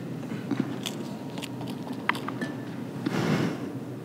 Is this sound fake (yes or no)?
no